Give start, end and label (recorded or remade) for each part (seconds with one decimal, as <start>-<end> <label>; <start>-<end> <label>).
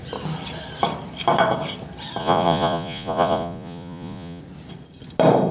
0.0-2.2 recorded; 2.2-4.4 remade; 4.4-5.5 recorded